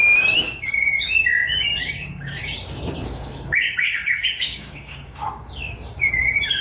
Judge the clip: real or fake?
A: fake